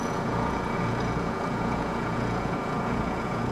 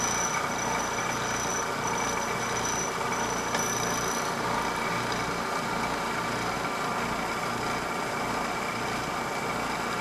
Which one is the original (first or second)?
second